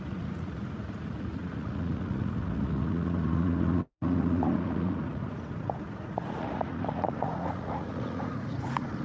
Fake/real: fake